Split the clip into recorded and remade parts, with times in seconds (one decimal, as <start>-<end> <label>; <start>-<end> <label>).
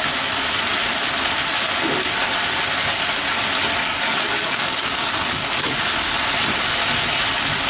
0.0-3.9 recorded; 3.9-5.8 remade; 5.8-7.7 recorded